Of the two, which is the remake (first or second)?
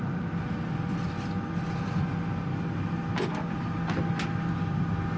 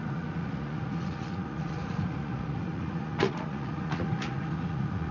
second